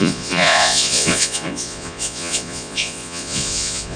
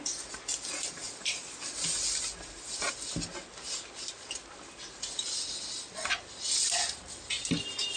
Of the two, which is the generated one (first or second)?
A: first